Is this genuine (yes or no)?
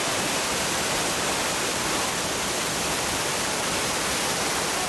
no